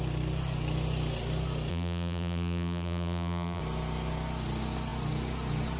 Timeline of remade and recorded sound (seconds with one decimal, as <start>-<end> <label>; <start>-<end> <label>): 0.0-1.7 recorded; 1.7-3.6 remade; 3.6-5.8 recorded